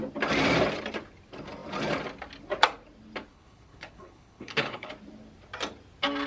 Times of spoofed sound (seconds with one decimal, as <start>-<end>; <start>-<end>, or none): 3.3-4.9